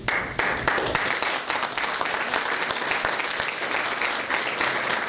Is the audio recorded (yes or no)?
yes